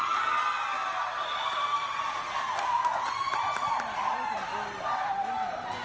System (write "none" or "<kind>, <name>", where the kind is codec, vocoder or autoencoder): none